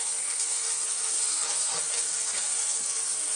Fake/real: fake